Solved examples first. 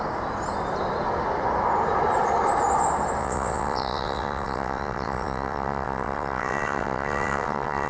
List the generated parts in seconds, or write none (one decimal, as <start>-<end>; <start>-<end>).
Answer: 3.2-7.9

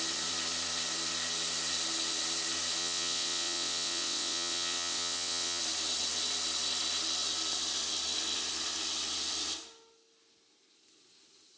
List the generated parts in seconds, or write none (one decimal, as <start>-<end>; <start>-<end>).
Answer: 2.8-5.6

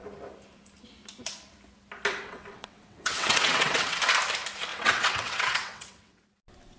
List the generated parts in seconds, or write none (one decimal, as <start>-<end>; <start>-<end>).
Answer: 2.1-4.0; 4.7-6.2

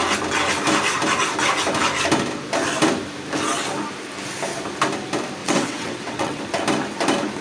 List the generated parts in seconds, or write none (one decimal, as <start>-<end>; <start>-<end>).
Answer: 5.4-6.4

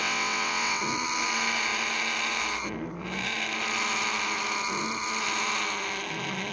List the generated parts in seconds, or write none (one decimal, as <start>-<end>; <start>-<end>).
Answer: 0.0-0.8

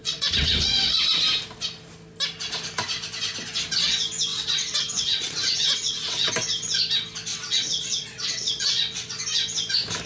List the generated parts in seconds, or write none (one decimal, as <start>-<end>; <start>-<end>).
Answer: 0.0-1.1; 4.3-6.3; 7.3-9.2